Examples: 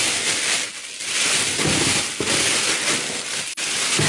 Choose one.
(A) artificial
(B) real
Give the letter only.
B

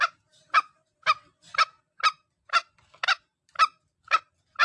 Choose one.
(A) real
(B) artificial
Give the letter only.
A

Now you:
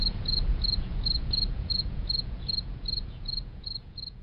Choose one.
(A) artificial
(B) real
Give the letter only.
A